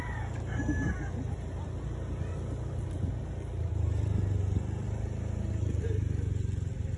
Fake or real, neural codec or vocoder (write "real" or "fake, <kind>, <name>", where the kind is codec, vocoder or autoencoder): real